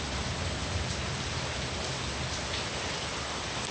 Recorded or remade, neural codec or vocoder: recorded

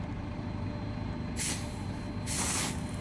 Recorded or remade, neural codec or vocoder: recorded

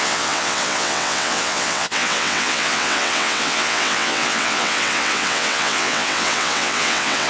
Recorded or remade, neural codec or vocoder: remade, vocoder, WaveNeXt